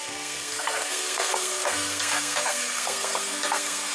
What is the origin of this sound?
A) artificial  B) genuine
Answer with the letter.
A